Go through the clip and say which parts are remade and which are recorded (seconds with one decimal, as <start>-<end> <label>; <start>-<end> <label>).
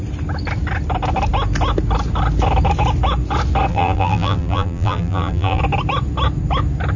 0.0-3.7 recorded; 3.7-5.6 remade; 5.6-7.0 recorded